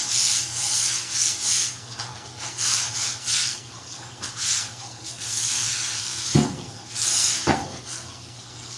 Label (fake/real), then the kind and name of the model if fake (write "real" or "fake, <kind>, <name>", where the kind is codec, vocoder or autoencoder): fake, codec, SNAC